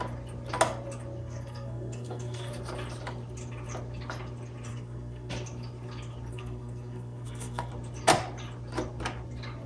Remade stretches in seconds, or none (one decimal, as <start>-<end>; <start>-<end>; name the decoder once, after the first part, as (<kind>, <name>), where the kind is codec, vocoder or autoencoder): 1.2-2.5 (codec, SNAC); 4.7-5.3; 6.3-7.7